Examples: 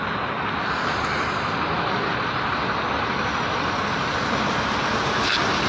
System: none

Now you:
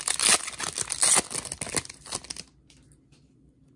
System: none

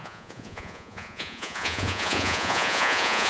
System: vocoder, Vocos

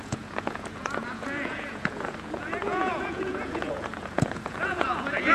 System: vocoder, Vocos